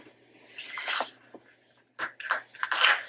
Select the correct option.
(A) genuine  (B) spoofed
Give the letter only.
A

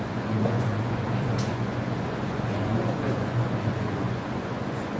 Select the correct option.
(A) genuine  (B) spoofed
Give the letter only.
B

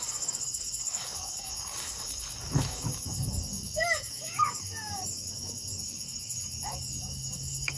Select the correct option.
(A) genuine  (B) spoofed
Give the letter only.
B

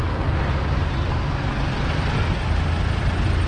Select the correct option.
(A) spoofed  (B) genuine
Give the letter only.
B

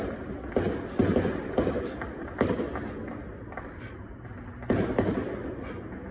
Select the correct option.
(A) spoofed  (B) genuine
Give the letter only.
B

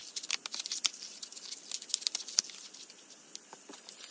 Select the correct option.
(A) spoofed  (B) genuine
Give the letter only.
B